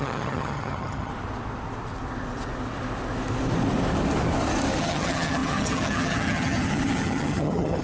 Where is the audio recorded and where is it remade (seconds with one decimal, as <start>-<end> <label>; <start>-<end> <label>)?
0.0-1.1 remade; 1.1-4.8 recorded; 4.8-7.8 remade